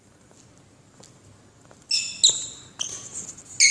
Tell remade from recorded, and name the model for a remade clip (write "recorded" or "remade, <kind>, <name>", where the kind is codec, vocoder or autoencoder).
recorded